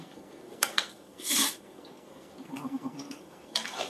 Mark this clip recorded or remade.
remade